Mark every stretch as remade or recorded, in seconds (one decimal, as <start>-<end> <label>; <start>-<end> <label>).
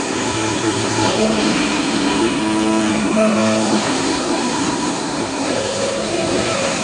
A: 0.0-2.4 remade; 2.4-2.9 recorded; 2.9-6.8 remade